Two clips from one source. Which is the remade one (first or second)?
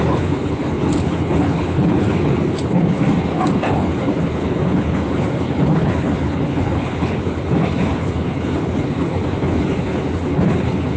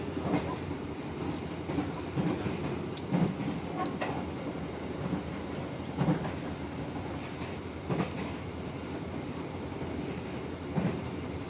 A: first